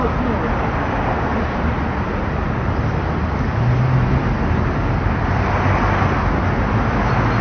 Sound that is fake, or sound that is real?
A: real